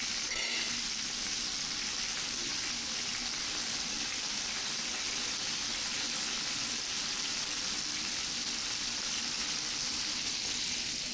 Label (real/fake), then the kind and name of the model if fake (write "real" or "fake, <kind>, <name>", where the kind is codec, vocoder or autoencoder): real